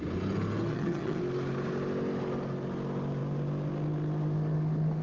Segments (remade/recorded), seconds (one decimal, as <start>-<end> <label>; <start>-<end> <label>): 0.0-0.7 recorded; 0.7-1.2 remade; 1.2-5.0 recorded